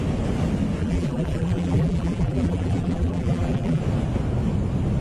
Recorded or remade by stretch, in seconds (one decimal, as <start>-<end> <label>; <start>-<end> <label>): 0.0-0.8 recorded; 0.8-3.8 remade; 3.8-5.0 recorded